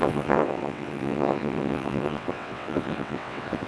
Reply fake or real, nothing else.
fake